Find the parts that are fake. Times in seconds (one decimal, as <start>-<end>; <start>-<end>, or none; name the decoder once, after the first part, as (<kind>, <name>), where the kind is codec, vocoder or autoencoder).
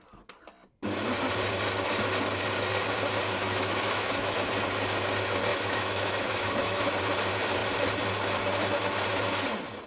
3.4-4.5 (autoencoder, DAC-VAE); 5.5-6.9